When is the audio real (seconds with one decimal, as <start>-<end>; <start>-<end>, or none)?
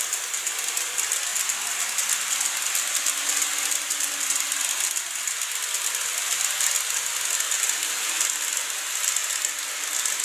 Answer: 0.0-10.2